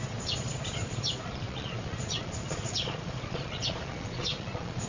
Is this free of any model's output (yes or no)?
no